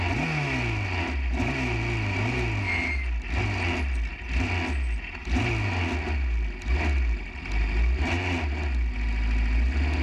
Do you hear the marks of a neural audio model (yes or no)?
no